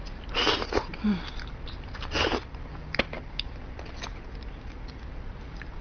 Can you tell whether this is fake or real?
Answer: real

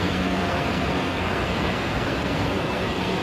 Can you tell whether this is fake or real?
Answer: fake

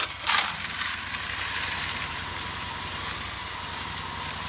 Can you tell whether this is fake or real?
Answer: real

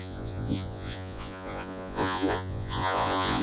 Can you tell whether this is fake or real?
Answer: fake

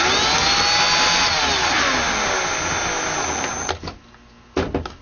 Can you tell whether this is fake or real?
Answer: real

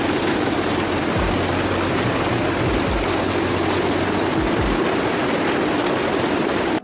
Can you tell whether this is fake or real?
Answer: real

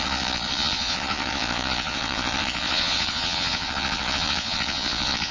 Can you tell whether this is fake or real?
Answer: fake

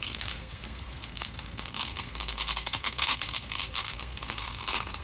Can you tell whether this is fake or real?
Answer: fake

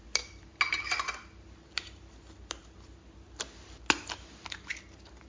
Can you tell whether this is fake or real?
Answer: real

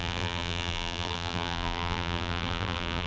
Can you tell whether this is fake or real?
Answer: fake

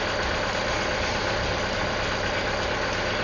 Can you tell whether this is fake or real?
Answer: real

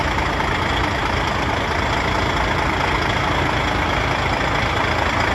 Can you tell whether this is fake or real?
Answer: real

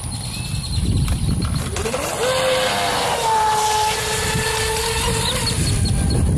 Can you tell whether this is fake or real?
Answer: real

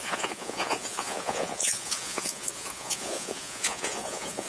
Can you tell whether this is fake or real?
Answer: fake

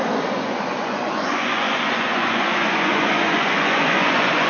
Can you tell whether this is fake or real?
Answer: fake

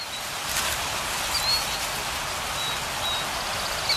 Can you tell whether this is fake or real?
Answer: real